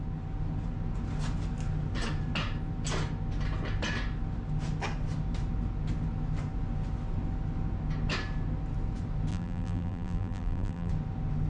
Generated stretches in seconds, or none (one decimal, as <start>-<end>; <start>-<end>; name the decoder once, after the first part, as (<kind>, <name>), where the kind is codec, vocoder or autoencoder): 9.3-10.9 (vocoder, BigVGAN v2)